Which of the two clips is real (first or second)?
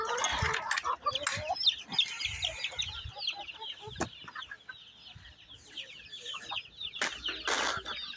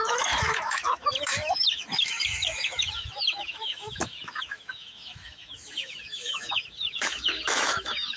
first